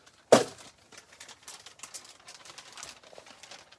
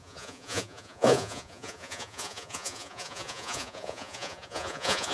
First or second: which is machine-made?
second